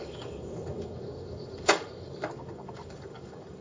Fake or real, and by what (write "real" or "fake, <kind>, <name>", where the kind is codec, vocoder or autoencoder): fake, codec, DAC